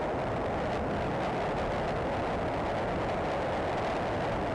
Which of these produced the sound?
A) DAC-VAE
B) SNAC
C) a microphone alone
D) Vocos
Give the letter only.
C